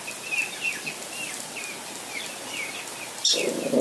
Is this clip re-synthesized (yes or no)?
no